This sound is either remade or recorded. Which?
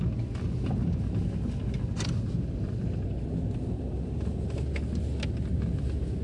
recorded